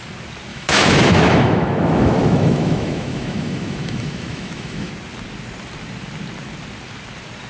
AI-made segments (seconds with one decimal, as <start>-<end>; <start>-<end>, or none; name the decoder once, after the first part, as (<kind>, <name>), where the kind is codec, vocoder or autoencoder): 0.5-4.9 (autoencoder, DAC-VAE)